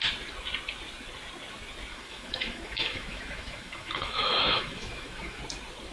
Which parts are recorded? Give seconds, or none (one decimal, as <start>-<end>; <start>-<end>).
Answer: 0.0-1.9; 5.4-5.9